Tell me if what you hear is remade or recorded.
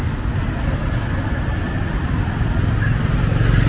recorded